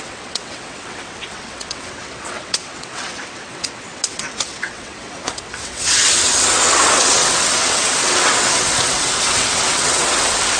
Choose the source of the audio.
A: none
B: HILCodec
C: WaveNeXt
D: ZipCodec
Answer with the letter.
C